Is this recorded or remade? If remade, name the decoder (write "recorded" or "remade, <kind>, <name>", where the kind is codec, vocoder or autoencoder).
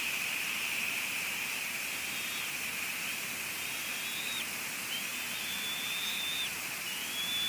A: recorded